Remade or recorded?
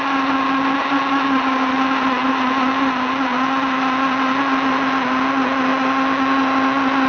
recorded